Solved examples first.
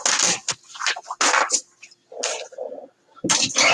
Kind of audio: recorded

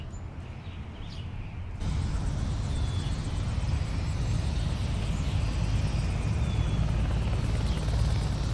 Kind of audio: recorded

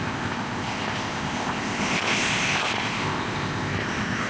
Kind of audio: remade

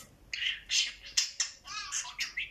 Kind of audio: recorded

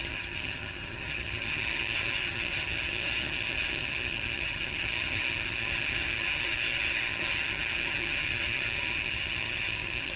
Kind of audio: remade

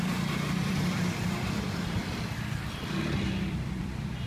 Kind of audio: remade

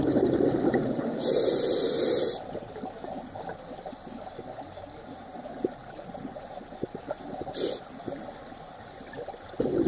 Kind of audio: recorded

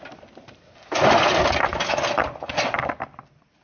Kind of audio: recorded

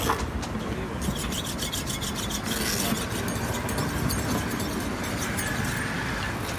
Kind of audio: recorded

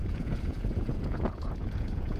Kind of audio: remade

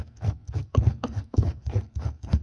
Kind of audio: remade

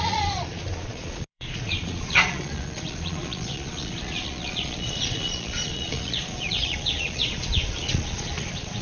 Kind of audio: remade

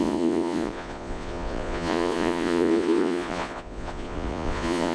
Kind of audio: remade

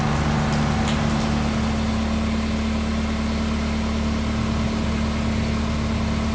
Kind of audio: recorded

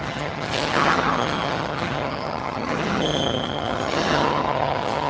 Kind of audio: remade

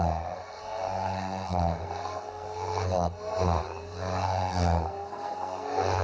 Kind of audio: remade